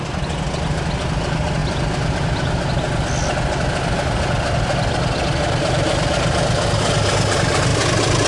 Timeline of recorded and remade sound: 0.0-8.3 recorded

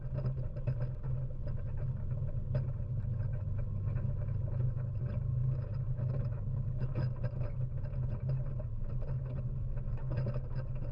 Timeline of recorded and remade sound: 0.0-3.3 recorded; 3.3-5.0 remade; 5.0-5.4 recorded; 5.4-6.9 remade; 6.9-10.9 recorded

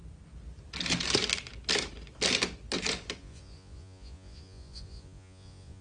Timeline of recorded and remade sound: 0.0-3.2 recorded; 3.2-5.8 remade